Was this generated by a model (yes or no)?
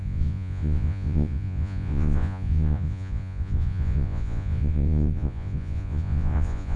yes